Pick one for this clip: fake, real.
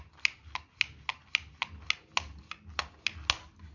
real